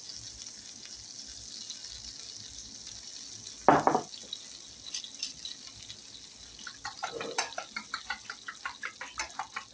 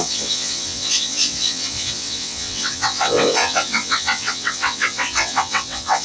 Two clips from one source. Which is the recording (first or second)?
first